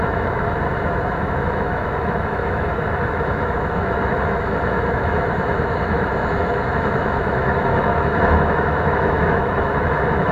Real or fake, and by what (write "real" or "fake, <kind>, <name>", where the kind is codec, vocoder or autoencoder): fake, autoencoder, DAC-VAE